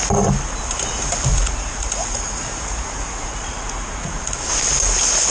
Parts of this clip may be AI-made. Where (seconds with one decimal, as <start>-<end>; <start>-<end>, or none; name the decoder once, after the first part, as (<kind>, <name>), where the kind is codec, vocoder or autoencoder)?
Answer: 1.3-4.5 (vocoder, Vocos)